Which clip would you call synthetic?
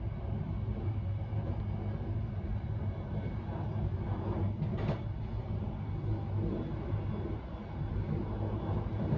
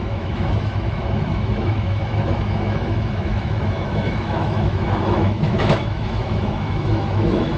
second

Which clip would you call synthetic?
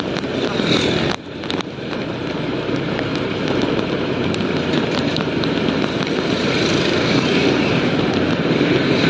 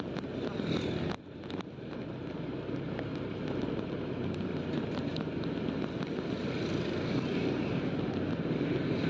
first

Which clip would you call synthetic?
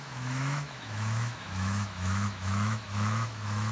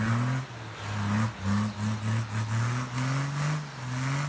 first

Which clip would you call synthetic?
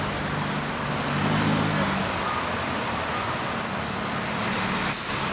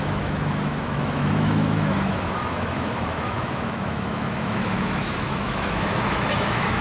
second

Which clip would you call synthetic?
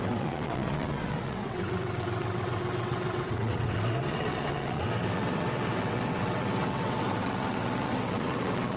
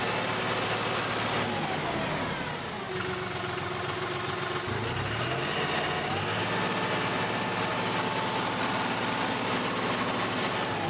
first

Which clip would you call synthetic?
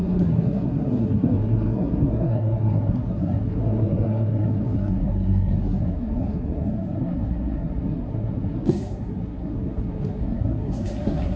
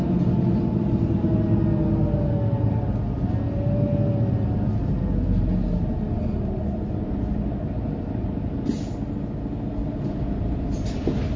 first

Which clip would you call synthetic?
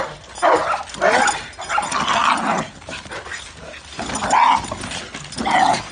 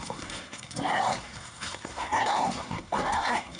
second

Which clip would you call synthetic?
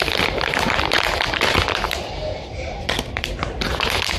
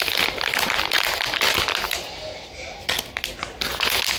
first